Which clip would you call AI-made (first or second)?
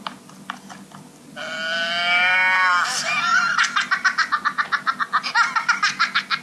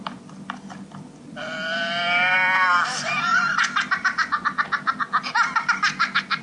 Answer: second